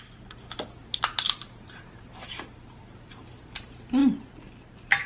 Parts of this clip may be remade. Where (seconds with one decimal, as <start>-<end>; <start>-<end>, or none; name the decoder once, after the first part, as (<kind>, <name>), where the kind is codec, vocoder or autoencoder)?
0.8-3.3 (vocoder, BigVGAN v2)